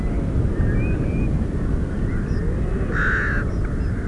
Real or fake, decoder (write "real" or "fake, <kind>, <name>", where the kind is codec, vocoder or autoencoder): real